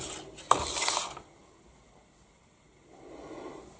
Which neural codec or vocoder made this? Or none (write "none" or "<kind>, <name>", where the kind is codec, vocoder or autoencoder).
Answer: none